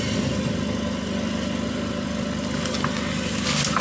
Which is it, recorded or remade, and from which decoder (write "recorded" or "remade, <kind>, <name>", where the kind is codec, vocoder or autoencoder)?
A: recorded